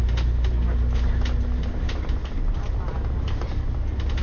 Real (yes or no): yes